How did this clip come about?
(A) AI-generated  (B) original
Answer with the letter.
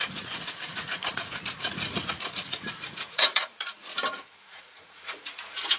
A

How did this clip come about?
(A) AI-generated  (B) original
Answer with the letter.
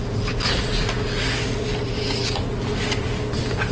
B